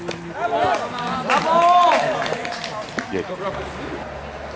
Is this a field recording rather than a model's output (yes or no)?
yes